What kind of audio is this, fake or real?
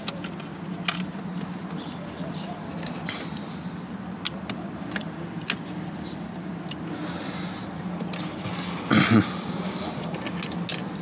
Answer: real